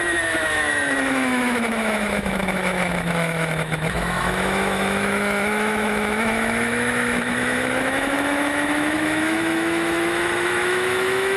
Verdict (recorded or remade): remade